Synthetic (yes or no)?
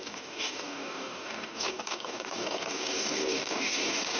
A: yes